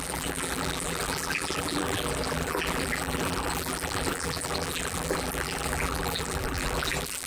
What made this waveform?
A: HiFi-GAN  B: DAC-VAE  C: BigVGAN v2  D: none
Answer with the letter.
C